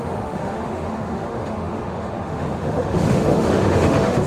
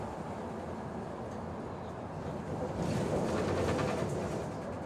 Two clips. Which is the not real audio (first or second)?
first